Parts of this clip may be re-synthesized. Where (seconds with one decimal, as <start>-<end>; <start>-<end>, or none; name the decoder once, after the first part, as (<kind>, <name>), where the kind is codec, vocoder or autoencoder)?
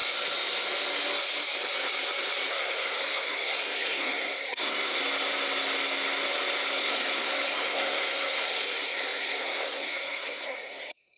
2.5-5.0 (codec, SNAC); 6.8-11.2